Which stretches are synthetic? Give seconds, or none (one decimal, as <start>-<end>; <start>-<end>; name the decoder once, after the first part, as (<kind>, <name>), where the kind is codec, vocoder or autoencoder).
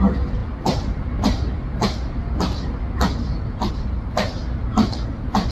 none